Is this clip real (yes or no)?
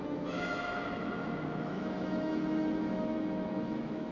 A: no